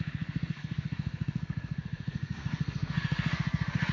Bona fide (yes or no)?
no